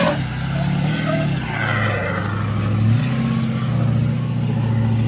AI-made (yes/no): no